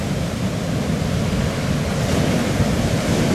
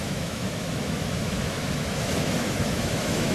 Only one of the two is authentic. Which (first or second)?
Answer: first